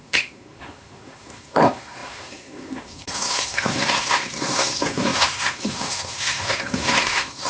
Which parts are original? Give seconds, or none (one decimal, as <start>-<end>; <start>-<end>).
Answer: none